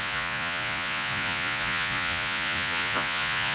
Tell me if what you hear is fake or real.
fake